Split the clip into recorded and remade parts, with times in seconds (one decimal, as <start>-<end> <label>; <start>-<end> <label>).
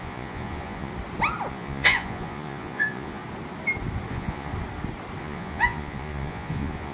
0.0-0.9 remade; 0.9-1.5 recorded; 1.5-3.2 remade; 3.2-4.1 recorded; 4.1-4.5 remade; 4.5-5.2 recorded; 5.2-6.9 remade